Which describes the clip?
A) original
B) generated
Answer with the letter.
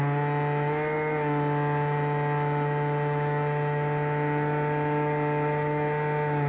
A